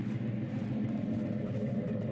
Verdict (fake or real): real